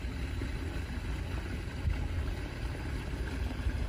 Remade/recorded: recorded